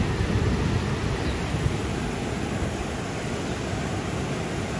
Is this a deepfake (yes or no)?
no